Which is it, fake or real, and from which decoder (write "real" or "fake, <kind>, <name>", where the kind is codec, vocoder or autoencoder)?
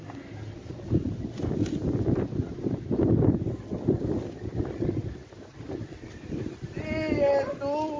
real